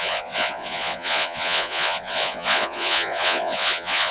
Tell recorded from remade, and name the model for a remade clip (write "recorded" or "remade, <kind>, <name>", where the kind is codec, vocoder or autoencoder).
remade, vocoder, Vocos